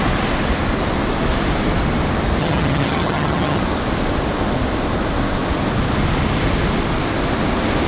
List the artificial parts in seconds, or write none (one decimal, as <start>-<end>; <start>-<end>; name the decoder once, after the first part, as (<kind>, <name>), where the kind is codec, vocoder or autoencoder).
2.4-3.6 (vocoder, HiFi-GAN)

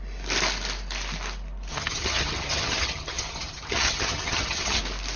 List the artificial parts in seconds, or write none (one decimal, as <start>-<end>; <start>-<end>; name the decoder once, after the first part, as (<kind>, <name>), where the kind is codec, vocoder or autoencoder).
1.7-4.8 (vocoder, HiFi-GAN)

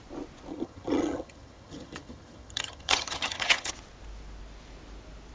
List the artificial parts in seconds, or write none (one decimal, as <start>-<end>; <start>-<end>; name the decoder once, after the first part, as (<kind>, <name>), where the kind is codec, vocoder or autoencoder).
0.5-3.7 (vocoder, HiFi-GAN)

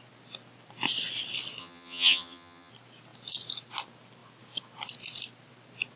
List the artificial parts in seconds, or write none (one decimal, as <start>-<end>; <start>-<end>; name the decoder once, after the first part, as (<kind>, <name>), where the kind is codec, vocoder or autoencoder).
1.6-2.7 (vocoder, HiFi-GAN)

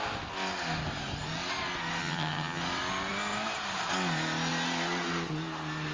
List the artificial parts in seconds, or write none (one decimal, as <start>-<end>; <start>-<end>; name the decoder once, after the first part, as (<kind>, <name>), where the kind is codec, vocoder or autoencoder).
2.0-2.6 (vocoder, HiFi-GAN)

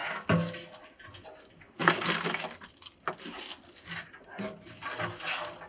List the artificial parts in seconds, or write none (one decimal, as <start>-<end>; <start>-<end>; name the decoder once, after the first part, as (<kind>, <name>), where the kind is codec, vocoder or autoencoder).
none